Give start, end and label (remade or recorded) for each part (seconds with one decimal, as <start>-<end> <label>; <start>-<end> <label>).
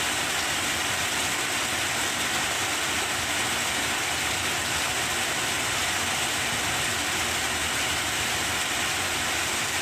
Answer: 0.0-4.6 recorded; 4.6-5.8 remade; 5.8-9.8 recorded